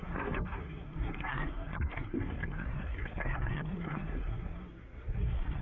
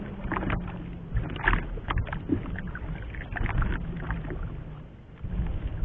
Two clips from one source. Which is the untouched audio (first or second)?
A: second